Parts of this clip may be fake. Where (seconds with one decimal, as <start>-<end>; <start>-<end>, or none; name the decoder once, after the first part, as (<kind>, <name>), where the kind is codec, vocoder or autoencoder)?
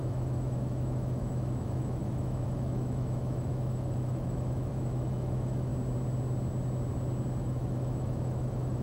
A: 0.0-5.7 (autoencoder, DAC-VAE); 7.4-8.8